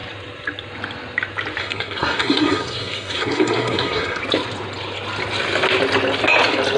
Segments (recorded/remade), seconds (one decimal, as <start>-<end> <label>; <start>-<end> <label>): 0.0-1.6 recorded; 1.6-4.2 remade; 4.2-6.8 recorded